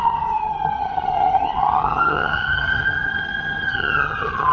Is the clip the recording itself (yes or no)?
no